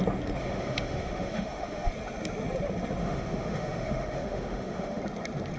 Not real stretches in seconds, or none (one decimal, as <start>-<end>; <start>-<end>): 0.4-1.9; 3.0-5.0